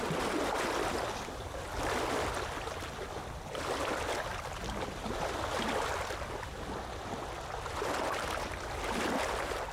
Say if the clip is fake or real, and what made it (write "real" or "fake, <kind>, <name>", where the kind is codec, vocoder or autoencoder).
real